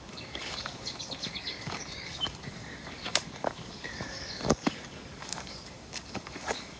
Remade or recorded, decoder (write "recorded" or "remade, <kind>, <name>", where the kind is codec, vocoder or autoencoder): remade, codec, DAC